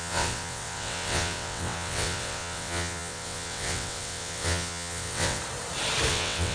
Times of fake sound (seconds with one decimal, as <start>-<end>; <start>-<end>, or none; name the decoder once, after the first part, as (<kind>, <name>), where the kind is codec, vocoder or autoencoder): 0.0-5.4 (vocoder, WaveNeXt); 6.1-6.5